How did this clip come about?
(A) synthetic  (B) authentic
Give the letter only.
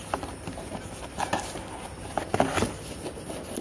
B